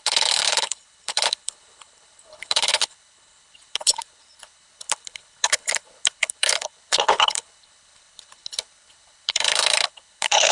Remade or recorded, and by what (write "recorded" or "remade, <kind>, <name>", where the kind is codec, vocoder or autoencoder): remade, codec, HILCodec